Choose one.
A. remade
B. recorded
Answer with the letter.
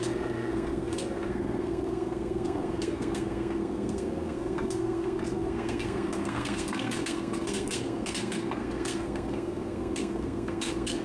A